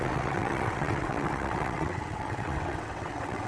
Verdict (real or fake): fake